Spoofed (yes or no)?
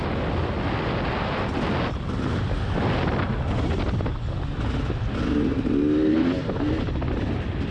no